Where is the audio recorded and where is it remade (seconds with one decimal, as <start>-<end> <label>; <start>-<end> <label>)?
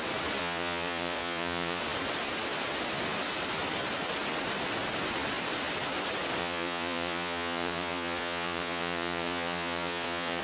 0.0-0.4 recorded; 0.4-1.8 remade; 1.8-6.4 recorded; 6.4-10.4 remade